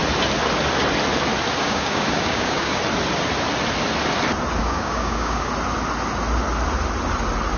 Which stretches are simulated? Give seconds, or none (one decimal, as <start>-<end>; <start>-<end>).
1.6-2.8; 4.6-5.5